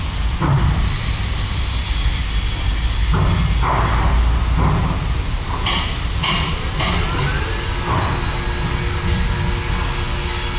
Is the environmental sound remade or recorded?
recorded